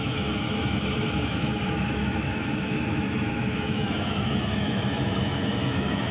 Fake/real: fake